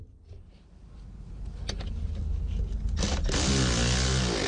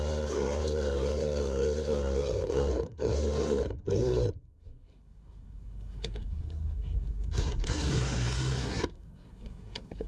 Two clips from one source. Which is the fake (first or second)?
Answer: second